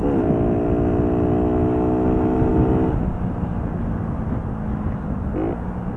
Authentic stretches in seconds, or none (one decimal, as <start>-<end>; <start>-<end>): 0.0-6.0